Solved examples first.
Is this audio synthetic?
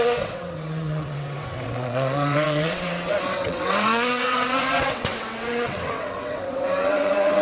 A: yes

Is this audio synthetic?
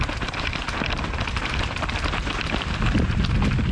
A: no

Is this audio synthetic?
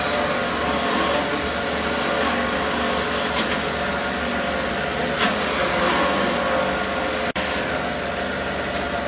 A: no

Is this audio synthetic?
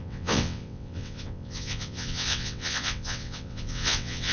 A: yes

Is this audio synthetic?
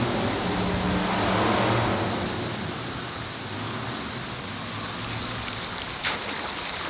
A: no